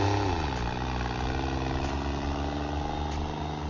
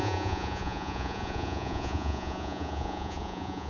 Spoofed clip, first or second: second